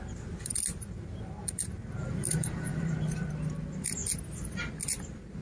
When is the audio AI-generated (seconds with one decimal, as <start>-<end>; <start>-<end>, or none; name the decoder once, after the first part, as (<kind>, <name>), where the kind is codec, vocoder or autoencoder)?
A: 2.7-3.3 (vocoder, BigVGAN v2)